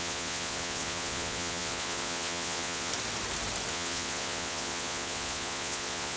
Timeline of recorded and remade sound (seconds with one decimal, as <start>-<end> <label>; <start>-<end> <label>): 0.0-2.9 remade; 2.9-3.7 recorded; 3.7-6.2 remade